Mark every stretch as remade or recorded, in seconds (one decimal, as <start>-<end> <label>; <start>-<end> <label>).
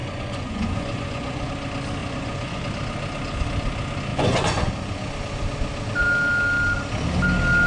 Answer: 0.0-1.5 remade; 1.5-2.0 recorded; 2.0-2.6 remade; 2.6-4.1 recorded; 4.1-4.7 remade; 4.7-7.7 recorded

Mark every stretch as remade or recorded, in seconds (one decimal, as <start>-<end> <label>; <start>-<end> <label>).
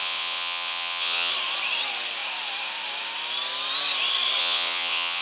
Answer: 0.0-1.3 remade; 1.3-4.4 recorded; 4.4-5.2 remade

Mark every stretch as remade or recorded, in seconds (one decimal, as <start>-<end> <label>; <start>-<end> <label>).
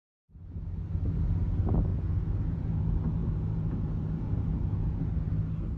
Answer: 0.0-1.9 recorded; 1.9-2.7 remade; 2.7-3.2 recorded; 3.2-5.0 remade; 5.0-5.8 recorded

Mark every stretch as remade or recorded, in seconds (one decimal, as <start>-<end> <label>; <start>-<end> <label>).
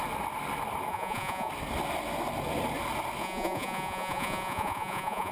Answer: 0.0-0.9 recorded; 0.9-1.5 remade; 1.5-3.2 recorded; 3.2-5.3 remade